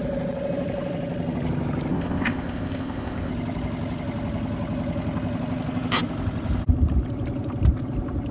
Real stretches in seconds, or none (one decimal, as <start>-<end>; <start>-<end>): 0.0-1.9; 3.3-8.3